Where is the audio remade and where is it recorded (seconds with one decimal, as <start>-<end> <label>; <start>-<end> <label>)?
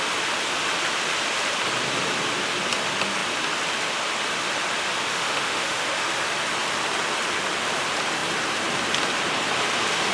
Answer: 0.0-5.1 recorded; 5.1-6.1 remade; 6.1-10.1 recorded